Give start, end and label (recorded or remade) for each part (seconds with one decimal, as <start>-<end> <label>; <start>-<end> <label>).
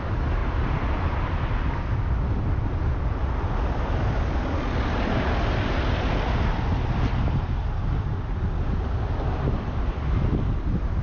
0.0-0.4 recorded; 0.4-1.9 remade; 1.9-11.0 recorded